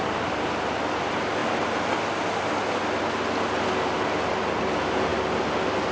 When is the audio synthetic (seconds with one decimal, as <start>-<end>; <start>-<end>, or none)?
none